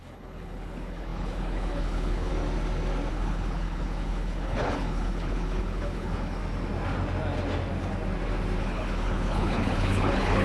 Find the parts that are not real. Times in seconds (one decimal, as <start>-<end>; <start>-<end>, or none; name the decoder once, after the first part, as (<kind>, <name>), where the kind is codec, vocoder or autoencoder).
0.0-2.3 (codec, HILCodec); 3.1-6.4; 8.6-10.4

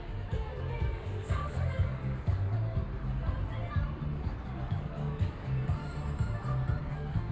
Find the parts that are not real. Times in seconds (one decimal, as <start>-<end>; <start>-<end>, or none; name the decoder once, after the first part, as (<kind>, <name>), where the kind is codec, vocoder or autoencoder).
0.0-2.8 (codec, DAC); 4.4-5.8; 6.8-7.3

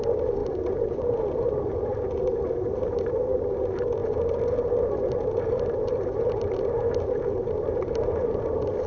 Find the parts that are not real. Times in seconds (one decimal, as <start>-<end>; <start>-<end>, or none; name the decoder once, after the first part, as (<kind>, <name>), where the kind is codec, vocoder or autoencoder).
none

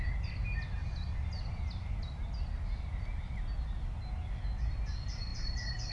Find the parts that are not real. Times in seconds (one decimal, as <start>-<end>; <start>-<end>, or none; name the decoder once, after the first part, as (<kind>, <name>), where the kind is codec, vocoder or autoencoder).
none

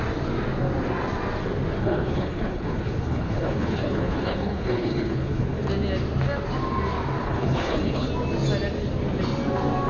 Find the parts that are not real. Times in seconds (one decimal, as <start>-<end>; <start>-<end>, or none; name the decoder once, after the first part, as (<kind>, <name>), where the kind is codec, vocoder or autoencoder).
1.8-5.6 (codec, HILCodec); 7.2-8.1

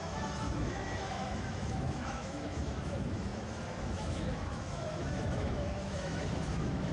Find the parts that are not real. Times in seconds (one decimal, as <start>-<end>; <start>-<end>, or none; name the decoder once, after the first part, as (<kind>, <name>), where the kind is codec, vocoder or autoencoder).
0.0-6.9 (autoencoder, DAC-VAE)

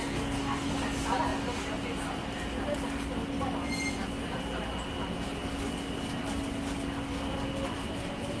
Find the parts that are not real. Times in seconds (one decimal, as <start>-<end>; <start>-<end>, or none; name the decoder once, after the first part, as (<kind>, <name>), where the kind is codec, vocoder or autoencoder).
0.0-0.7 (codec, DAC)